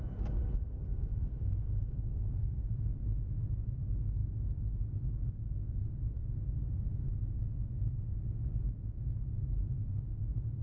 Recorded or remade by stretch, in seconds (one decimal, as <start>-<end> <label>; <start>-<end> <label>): 0.0-0.6 recorded; 0.6-2.7 remade; 2.7-10.6 recorded